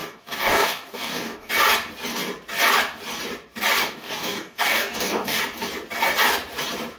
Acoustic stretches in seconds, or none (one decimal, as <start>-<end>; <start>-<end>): 1.5-3.8; 5.4-7.0

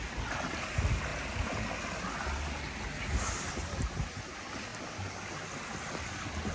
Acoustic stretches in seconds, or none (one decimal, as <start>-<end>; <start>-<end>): 0.0-6.5

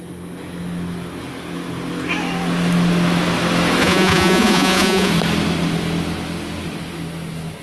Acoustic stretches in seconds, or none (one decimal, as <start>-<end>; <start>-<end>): 0.0-3.8; 5.1-7.6

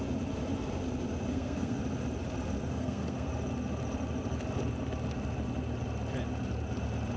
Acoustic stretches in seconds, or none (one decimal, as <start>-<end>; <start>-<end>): 0.0-1.3; 1.8-2.7; 3.3-7.2

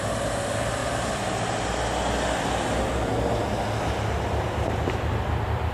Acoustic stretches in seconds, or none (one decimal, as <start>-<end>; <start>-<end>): 0.8-4.2

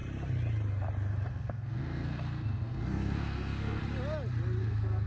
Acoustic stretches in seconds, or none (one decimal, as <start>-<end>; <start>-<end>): 0.0-1.3; 3.8-4.6

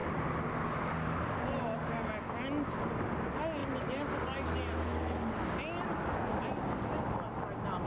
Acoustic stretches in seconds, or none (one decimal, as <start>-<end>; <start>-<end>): 1.2-3.6; 4.1-7.9

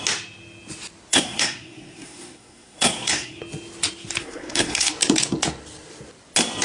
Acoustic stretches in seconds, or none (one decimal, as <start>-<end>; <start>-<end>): 0.0-1.1; 3.4-4.2; 4.9-6.6